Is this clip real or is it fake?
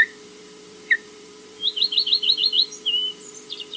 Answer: real